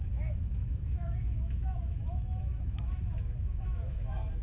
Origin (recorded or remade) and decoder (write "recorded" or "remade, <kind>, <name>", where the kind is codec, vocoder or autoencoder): remade, autoencoder, DAC-VAE